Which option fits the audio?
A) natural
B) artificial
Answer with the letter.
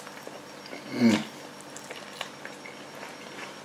A